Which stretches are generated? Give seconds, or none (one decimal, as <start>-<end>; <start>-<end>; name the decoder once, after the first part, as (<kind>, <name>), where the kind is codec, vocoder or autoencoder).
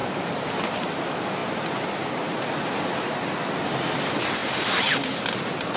none